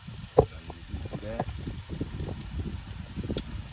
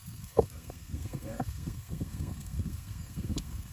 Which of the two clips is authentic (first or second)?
first